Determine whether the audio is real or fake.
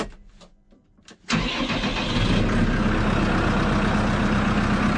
real